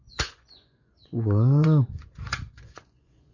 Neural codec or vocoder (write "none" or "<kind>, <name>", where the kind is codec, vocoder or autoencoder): vocoder, Vocos